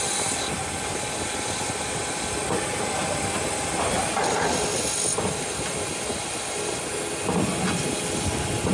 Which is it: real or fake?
real